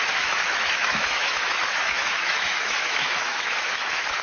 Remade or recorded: remade